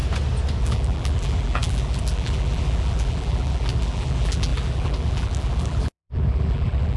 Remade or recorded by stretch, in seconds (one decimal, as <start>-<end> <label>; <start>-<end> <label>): 0.0-0.6 recorded; 0.6-7.0 remade